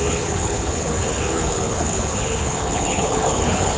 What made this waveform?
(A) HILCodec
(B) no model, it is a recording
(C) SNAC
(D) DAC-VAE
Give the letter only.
A